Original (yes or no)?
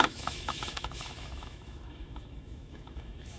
no